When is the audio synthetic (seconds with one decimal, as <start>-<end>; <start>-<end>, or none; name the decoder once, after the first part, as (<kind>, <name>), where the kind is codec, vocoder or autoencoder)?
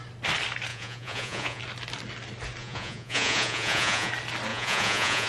0.7-1.6 (vocoder, Vocos); 2.6-4.1; 4.5-5.3